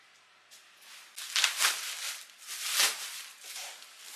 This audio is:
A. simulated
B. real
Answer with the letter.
B